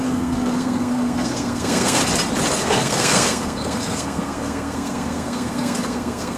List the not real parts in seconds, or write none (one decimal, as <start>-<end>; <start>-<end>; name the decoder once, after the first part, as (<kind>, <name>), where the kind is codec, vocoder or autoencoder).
0.0-2.0 (codec, SNAC); 2.6-6.4